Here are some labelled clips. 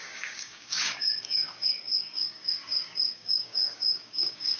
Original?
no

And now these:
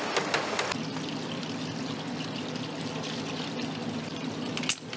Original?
yes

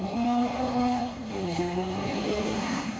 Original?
no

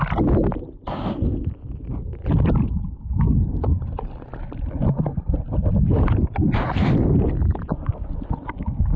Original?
yes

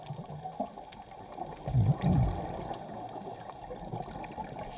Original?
yes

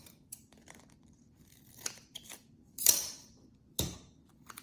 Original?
no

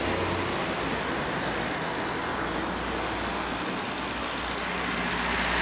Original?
yes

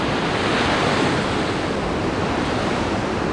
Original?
yes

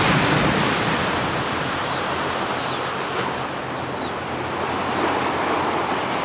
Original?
yes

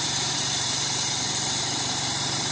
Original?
no